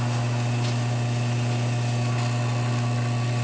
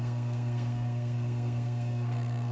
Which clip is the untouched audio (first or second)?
first